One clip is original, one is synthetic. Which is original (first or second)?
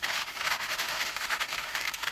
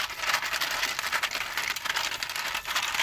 second